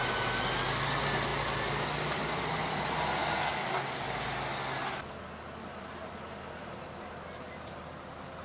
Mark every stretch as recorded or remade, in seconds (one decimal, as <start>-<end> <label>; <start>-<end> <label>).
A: 0.0-8.4 recorded